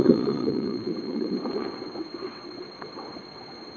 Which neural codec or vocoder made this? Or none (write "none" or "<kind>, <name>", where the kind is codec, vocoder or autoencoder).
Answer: vocoder, WaveNeXt